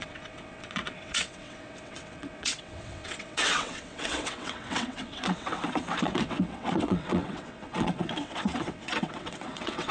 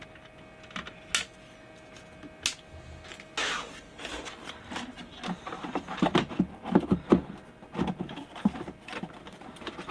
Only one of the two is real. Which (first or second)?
second